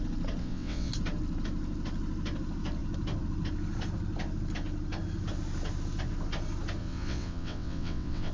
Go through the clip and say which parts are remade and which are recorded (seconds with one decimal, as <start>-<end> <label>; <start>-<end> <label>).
0.0-0.4 recorded; 0.4-0.9 remade; 0.9-6.8 recorded; 6.8-8.3 remade